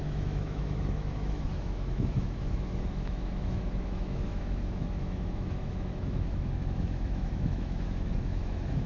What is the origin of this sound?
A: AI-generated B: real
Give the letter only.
A